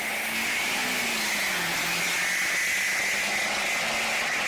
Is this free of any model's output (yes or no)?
yes